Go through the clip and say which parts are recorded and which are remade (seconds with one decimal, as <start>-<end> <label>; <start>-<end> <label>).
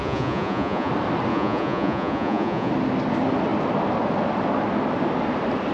0.0-0.9 remade; 0.9-1.3 recorded; 1.3-2.7 remade; 2.7-5.7 recorded